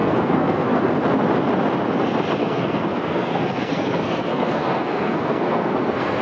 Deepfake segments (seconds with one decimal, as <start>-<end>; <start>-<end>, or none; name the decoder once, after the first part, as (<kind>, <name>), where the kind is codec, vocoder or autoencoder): 0.0-0.9 (codec, SNAC); 2.4-6.2